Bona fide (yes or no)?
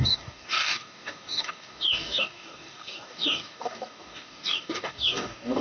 no